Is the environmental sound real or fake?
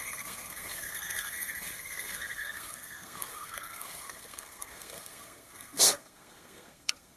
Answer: fake